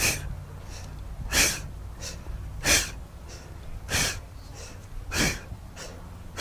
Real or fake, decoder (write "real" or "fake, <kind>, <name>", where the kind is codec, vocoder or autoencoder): fake, vocoder, BigVGAN v2